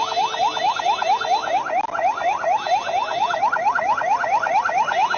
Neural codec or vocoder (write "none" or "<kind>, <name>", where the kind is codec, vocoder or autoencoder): vocoder, BigVGAN v2